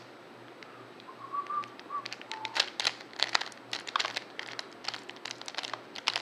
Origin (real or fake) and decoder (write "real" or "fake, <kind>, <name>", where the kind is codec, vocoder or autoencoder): real